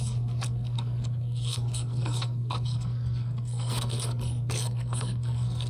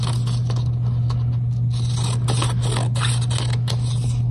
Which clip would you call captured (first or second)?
second